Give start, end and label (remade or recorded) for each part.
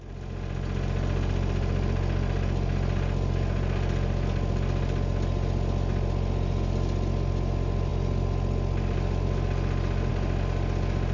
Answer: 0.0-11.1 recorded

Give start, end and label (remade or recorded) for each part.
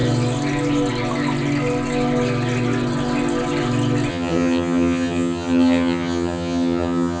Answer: 0.0-4.1 recorded; 4.1-7.2 remade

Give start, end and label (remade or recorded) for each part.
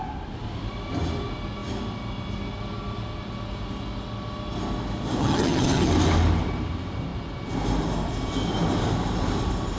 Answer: 0.0-5.2 recorded; 5.2-5.9 remade; 5.9-9.8 recorded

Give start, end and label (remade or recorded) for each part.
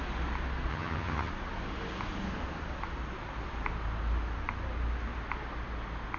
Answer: 0.0-0.7 recorded; 0.7-1.3 remade; 1.3-6.2 recorded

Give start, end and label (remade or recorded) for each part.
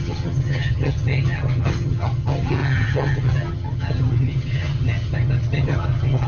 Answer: 0.0-6.3 remade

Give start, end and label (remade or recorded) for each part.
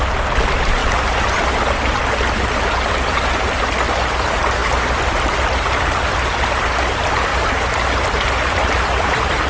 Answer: 0.0-9.5 recorded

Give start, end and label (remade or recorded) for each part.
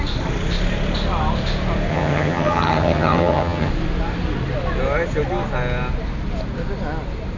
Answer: 0.0-1.9 recorded; 1.9-3.7 remade; 3.7-7.4 recorded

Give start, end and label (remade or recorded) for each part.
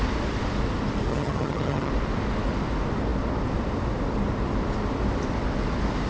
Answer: 0.0-1.1 recorded; 1.1-1.9 remade; 1.9-6.1 recorded